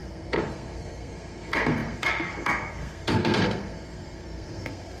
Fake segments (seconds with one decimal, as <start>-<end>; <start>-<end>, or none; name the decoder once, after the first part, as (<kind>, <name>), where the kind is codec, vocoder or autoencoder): 0.0-5.0 (codec, SNAC)